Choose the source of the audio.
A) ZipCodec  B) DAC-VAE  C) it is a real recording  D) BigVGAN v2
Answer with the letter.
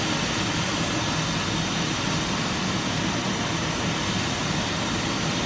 C